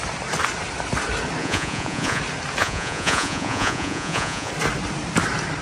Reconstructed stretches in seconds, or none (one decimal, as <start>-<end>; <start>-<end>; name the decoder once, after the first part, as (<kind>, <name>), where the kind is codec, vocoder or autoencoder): 1.4-2.2 (vocoder, Vocos); 2.6-4.5